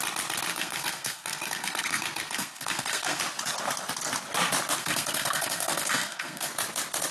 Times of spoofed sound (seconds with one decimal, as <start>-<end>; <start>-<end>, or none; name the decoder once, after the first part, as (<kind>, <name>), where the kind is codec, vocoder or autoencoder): 0.5-3.2 (codec, SNAC); 4.8-6.5